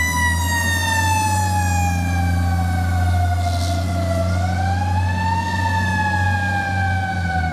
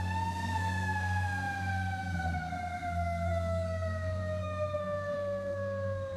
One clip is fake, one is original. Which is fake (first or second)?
second